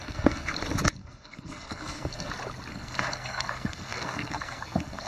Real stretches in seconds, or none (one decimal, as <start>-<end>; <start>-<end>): 0.5-1.0; 2.3-2.7